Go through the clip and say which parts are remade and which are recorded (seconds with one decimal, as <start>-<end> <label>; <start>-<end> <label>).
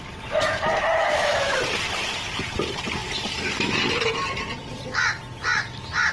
0.0-1.0 recorded; 1.0-1.6 remade; 1.6-6.1 recorded